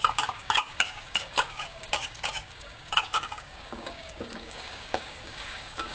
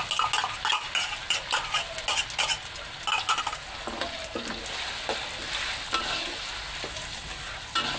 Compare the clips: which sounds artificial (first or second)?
first